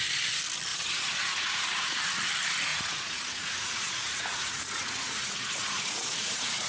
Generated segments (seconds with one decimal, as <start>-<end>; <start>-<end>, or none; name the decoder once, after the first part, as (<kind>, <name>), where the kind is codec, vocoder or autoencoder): 0.7-2.0 (vocoder, Vocos); 2.7-6.7